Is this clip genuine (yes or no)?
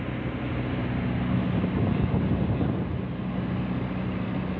yes